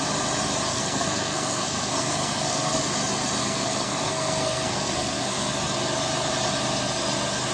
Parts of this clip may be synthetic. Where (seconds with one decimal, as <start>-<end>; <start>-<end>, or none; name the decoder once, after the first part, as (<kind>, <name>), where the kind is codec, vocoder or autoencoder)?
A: 0.7-2.8 (codec, SNAC); 3.4-5.5